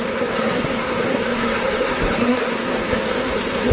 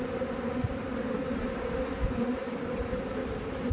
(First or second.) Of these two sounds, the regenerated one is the first